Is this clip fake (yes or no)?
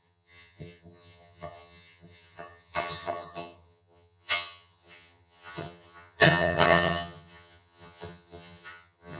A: yes